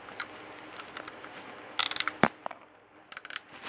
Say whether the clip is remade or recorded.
recorded